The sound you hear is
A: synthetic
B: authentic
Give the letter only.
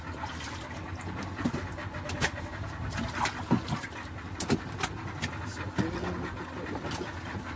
B